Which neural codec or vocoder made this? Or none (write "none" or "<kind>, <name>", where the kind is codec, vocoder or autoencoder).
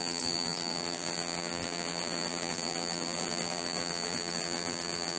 vocoder, BigVGAN v2